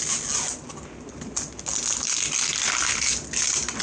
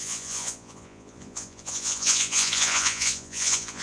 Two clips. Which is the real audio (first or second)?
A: first